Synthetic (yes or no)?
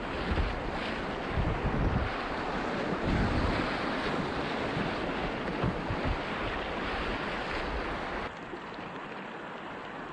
no